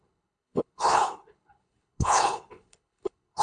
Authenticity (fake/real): fake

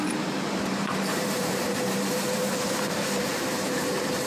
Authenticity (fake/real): fake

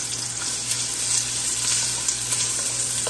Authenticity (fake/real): real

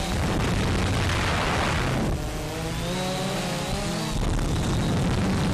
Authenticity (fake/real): real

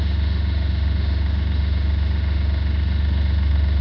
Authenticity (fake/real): fake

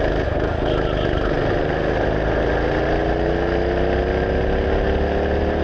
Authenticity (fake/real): real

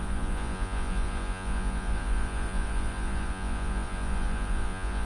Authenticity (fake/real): fake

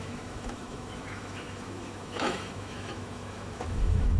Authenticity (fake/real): fake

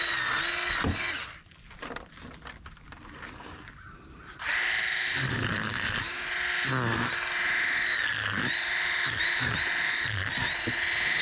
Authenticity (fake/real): real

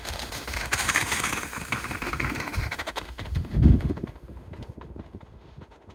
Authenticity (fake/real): fake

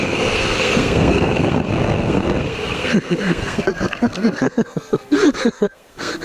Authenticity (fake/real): fake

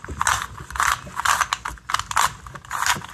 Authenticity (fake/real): real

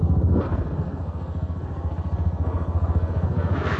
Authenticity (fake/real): fake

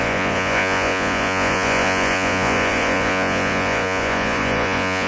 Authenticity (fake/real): fake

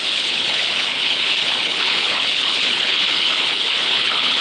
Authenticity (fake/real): fake